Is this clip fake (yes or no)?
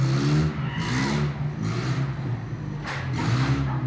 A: no